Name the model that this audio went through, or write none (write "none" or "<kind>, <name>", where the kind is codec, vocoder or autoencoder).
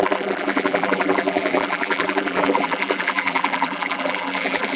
vocoder, BigVGAN v2